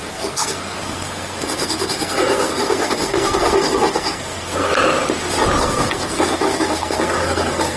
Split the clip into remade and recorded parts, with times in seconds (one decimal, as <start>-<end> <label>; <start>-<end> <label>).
0.0-4.7 remade; 4.7-5.6 recorded; 5.6-7.8 remade